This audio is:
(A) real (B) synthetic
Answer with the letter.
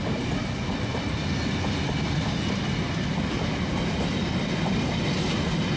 A